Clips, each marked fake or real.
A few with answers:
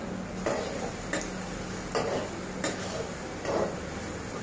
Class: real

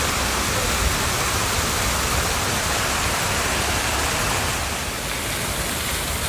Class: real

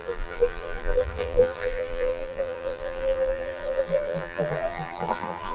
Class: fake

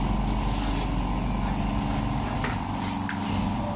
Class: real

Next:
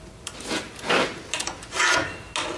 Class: real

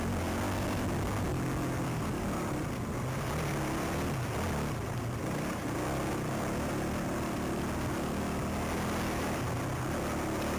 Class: real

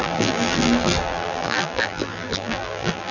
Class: fake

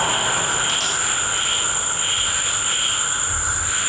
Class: real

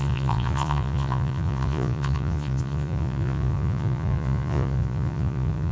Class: fake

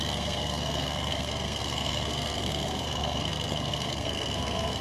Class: fake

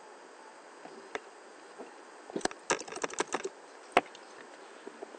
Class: real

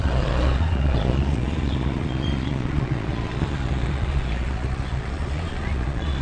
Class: fake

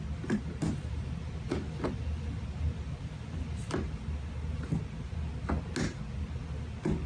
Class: real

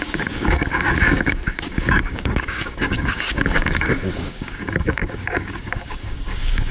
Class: fake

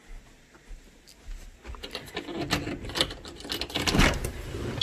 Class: real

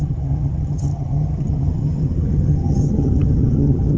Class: fake